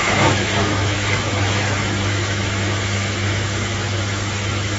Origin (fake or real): fake